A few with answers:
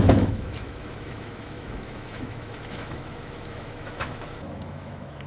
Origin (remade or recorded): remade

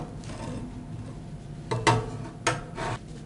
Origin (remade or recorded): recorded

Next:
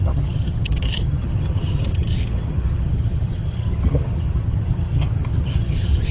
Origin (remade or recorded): remade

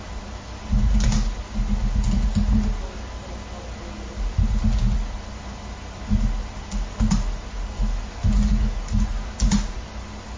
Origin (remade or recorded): recorded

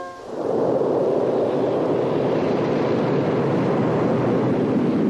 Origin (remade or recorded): recorded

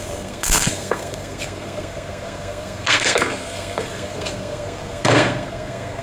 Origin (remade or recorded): remade